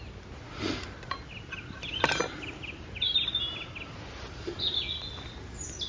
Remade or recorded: recorded